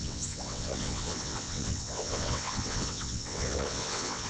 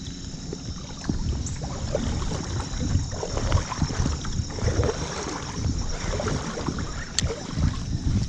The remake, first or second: first